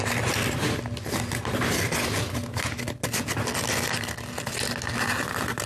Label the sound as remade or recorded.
recorded